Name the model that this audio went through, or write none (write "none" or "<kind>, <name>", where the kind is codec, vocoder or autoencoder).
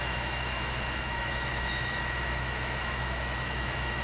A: autoencoder, DAC-VAE